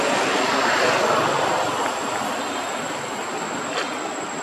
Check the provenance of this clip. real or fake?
real